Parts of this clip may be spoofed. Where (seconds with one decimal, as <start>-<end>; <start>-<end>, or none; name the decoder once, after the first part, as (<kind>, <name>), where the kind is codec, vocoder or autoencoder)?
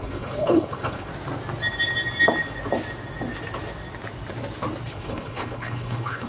0.0-1.1 (codec, HILCodec); 4.9-6.3